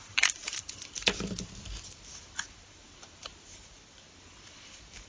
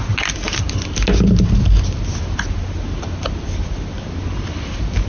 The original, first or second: second